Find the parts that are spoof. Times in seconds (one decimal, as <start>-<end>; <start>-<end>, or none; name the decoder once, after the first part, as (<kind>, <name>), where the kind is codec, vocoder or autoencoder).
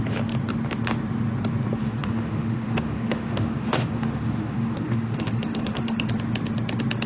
1.8-6.1 (autoencoder, DAC-VAE)